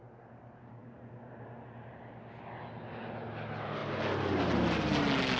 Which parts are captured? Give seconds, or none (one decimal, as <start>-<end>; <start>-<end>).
0.0-5.4